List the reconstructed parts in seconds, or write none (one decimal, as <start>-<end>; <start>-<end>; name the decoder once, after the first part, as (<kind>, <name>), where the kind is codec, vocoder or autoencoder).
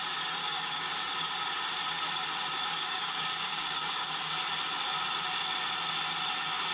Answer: 0.4-0.9 (codec, DAC); 2.8-4.3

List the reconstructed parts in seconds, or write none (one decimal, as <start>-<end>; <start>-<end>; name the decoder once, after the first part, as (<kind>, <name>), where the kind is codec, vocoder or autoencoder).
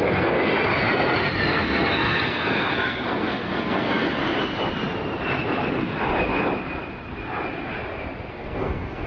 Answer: 0.0-0.5 (codec, SNAC); 1.5-4.2; 8.3-9.1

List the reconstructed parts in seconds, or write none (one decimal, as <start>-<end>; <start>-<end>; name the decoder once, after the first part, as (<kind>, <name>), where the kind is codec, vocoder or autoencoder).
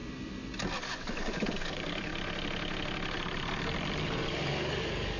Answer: 0.8-2.1 (codec, DAC); 4.0-5.2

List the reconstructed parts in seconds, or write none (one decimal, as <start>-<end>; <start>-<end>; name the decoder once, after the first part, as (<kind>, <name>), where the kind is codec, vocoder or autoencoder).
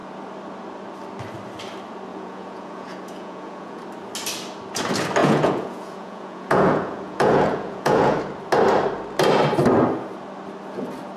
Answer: 2.1-3.8 (vocoder, Vocos); 5.2-8.2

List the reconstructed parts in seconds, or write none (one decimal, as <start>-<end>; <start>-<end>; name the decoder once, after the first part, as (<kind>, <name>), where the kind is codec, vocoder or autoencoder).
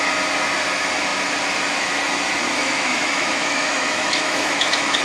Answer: 2.6-5.0 (autoencoder, DAC-VAE)